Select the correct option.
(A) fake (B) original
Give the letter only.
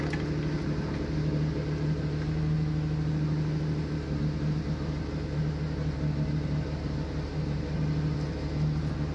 B